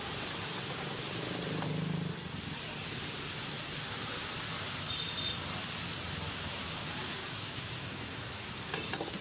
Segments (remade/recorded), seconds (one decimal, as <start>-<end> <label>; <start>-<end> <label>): 0.0-7.2 recorded; 7.2-8.5 remade; 8.5-9.2 recorded